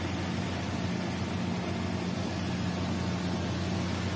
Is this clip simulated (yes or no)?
no